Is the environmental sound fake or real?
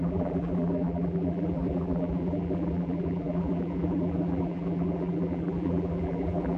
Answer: fake